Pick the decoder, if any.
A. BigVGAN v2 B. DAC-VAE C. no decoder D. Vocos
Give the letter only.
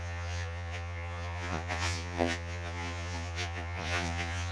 D